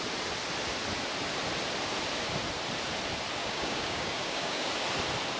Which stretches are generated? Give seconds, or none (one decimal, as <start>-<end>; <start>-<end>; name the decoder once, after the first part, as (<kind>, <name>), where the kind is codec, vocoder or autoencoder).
3.4-4.7 (codec, DAC)